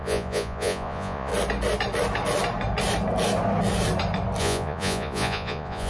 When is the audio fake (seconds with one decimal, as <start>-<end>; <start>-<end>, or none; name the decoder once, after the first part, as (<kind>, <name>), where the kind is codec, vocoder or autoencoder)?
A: 0.0-1.3 (vocoder, Vocos); 4.4-5.9